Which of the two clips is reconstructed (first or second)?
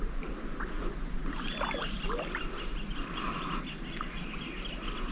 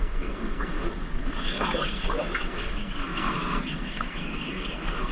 second